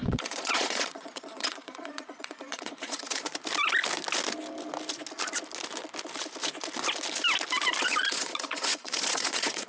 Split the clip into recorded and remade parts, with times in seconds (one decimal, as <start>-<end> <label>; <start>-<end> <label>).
0.0-3.3 remade; 3.3-7.8 recorded; 7.8-9.7 remade